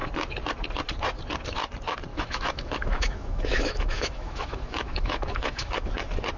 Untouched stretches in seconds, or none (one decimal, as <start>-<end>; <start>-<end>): 0.0-2.1; 5.9-6.4